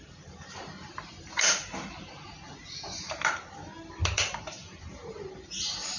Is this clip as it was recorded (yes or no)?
no